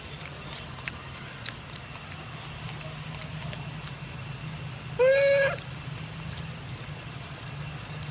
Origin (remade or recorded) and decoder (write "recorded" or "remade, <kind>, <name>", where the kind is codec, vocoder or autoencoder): recorded